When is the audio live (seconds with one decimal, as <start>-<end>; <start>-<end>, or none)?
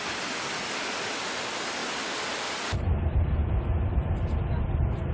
0.0-5.1